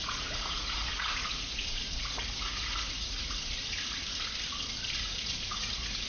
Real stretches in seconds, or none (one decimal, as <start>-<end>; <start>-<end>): 3.5-5.0